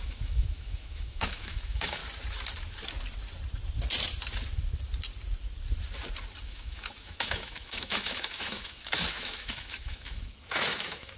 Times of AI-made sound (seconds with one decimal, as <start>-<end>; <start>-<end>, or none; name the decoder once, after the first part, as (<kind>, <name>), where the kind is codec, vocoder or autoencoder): 0.0-2.0 (autoencoder, DAC-VAE); 6.4-11.2